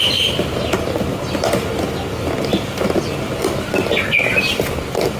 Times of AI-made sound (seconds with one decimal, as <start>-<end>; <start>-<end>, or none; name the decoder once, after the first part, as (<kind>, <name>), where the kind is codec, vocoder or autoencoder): none